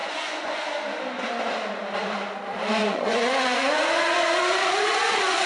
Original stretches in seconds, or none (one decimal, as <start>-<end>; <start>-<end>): 0.6-2.8